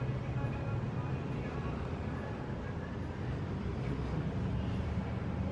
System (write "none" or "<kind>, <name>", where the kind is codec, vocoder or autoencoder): none